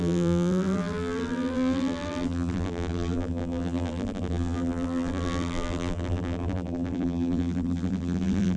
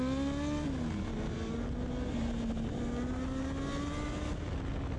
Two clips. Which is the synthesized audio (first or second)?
first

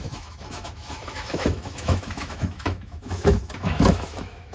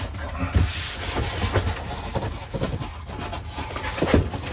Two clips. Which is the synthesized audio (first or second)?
first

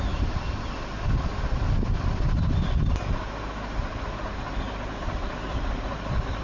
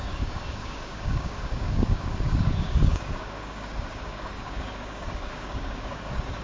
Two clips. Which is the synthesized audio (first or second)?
second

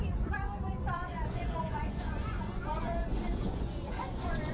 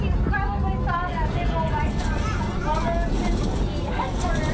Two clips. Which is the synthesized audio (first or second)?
first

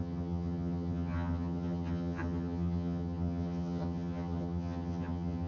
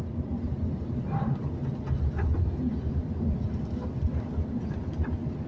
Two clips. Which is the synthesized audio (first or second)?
first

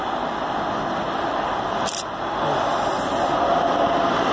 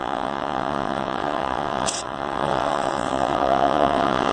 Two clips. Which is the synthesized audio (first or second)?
second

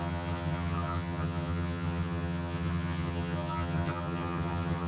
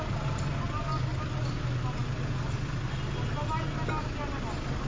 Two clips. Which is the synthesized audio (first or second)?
first